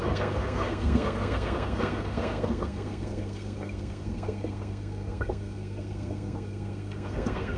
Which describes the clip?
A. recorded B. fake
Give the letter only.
B